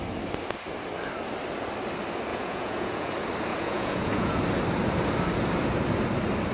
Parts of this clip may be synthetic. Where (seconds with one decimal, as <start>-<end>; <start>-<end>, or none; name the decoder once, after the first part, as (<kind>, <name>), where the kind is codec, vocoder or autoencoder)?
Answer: 2.3-3.1 (vocoder, Vocos); 3.5-4.4